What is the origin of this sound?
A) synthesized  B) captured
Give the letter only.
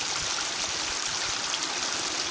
B